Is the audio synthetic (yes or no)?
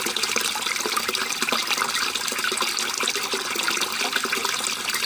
no